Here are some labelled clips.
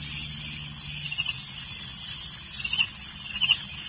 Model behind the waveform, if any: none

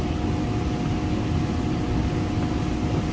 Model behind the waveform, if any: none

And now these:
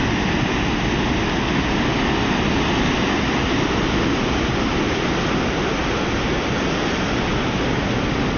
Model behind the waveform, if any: none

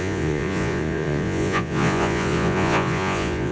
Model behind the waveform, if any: vocoder, Vocos